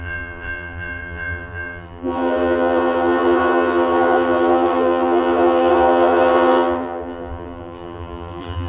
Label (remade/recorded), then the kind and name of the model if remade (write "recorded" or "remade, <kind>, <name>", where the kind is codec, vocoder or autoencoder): remade, vocoder, BigVGAN v2